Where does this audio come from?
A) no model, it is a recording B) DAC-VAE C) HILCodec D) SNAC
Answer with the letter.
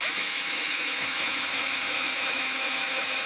B